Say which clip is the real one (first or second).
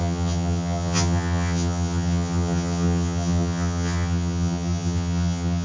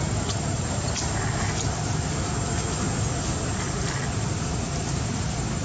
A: second